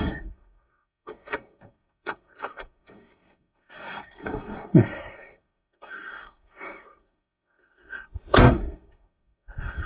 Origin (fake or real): fake